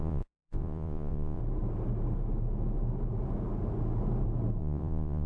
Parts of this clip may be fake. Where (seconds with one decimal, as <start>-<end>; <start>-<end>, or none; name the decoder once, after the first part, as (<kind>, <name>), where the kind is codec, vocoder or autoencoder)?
0.0-1.4 (vocoder, Vocos); 4.6-5.3